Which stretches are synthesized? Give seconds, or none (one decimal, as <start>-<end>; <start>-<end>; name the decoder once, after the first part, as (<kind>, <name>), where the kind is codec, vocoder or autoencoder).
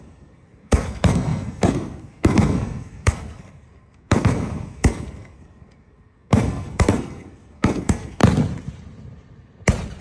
0.0-8.2 (codec, SNAC)